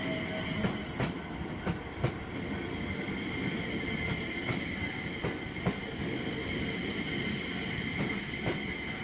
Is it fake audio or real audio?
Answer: real